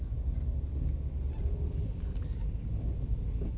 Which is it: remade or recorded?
recorded